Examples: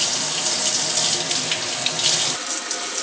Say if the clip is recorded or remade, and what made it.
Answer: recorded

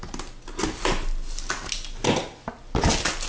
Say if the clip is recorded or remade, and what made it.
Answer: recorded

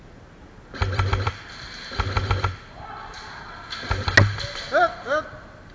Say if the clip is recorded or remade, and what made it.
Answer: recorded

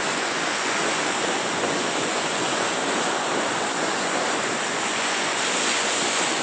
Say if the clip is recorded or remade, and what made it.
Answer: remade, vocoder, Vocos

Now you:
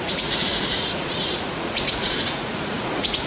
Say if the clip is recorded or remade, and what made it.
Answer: remade, vocoder, Vocos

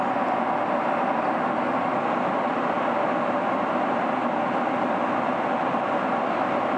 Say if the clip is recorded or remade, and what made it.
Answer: recorded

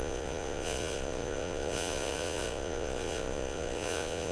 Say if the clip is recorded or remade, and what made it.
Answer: remade, vocoder, Vocos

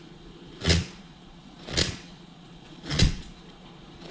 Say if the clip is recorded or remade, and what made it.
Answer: remade, vocoder, Vocos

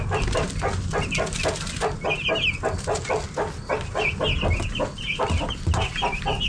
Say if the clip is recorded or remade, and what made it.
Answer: recorded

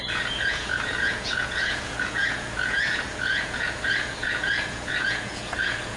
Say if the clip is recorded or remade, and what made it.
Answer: remade, vocoder, Vocos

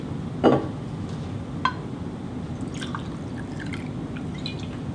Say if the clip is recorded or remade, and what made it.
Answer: recorded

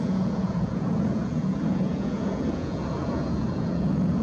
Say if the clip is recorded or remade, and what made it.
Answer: remade, vocoder, Vocos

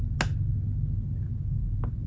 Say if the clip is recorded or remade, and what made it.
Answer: recorded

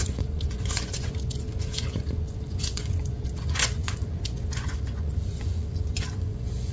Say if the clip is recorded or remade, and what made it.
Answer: remade, vocoder, Vocos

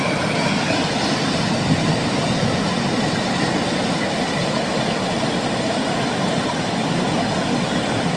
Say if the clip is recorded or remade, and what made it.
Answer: recorded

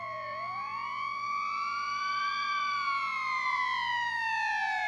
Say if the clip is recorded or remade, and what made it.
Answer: remade, vocoder, Vocos